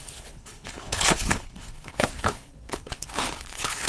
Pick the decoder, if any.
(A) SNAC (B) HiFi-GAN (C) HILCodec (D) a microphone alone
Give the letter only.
C